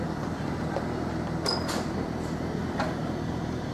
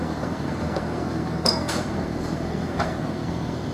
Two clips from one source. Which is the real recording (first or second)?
first